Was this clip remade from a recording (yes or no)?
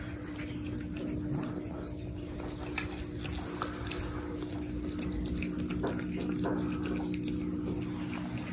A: no